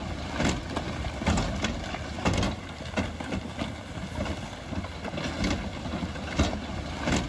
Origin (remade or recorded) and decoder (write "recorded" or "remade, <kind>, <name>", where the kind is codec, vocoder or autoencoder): recorded